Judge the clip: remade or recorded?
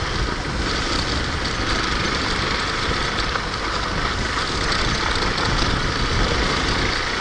recorded